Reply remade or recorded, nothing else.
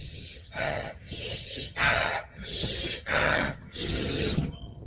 remade